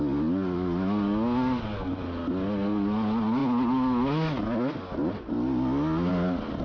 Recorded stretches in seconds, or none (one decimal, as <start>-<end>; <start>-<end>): 0.0-6.6